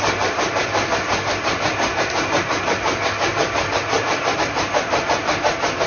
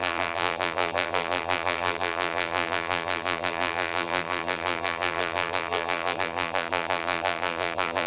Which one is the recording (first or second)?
first